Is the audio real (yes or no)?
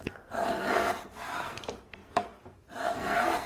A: no